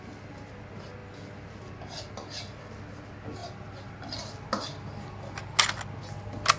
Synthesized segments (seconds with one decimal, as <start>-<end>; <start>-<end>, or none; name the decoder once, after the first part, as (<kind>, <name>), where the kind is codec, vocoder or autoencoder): none